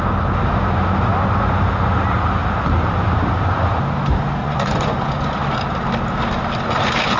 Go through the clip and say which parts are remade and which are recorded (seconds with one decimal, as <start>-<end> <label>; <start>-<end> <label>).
0.0-4.4 recorded; 4.4-5.6 remade; 5.6-7.2 recorded